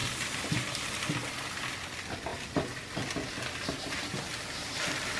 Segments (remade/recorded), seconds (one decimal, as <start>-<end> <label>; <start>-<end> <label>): 0.0-5.2 recorded